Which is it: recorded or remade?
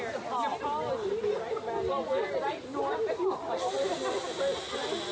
recorded